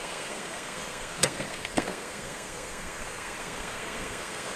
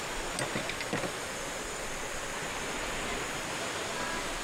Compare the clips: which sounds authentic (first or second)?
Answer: second